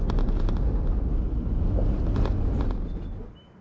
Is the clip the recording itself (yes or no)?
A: yes